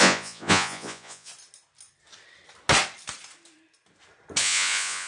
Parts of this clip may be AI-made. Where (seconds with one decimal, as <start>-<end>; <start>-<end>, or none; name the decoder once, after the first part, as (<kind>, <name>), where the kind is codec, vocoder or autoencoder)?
0.0-1.3 (vocoder, Vocos); 4.4-5.1